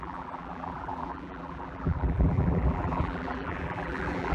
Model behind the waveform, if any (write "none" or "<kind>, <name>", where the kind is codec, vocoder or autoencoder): vocoder, BigVGAN v2